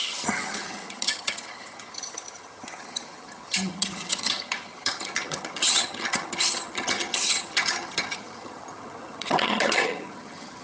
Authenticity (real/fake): fake